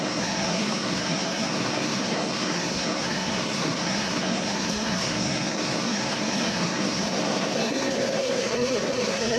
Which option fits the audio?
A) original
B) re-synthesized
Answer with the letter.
B